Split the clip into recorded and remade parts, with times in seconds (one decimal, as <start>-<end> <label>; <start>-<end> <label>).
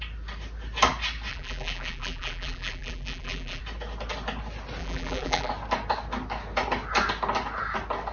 0.0-1.3 recorded; 1.3-3.6 remade; 3.6-4.8 recorded; 4.8-5.5 remade; 5.5-8.1 recorded